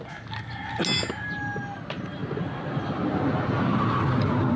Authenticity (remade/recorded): recorded